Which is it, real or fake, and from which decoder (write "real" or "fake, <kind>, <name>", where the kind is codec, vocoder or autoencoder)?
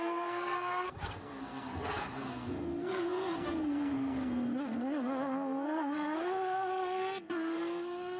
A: fake, codec, SNAC